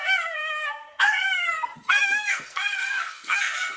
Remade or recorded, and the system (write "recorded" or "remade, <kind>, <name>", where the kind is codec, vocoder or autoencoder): remade, codec, SNAC